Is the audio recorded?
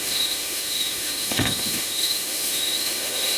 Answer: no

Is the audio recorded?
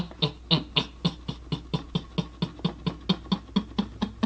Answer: yes